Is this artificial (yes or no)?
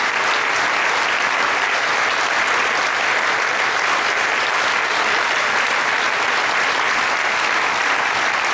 no